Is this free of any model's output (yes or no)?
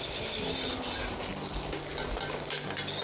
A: yes